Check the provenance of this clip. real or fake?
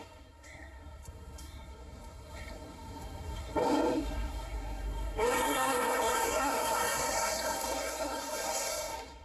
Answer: fake